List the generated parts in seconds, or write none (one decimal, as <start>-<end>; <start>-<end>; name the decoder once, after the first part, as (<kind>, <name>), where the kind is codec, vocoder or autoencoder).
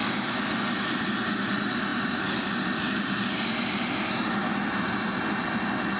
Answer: none